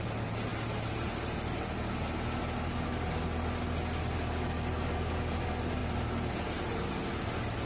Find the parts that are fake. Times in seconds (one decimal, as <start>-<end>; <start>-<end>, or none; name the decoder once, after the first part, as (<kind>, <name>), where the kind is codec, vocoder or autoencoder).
5.8-6.9 (vocoder, BigVGAN v2)